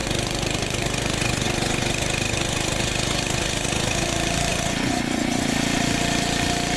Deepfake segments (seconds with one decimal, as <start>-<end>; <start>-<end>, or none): 0.0-4.1; 4.5-5.4